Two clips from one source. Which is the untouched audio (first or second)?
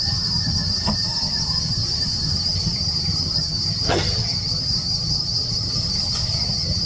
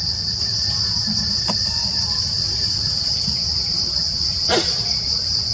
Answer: second